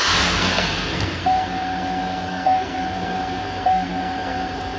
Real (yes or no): no